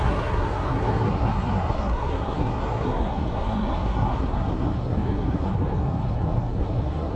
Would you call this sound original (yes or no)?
no